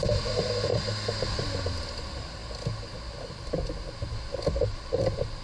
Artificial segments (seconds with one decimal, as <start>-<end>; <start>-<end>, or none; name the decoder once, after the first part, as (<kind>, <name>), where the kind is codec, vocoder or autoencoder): 0.0-2.4 (vocoder, BigVGAN v2); 3.2-5.4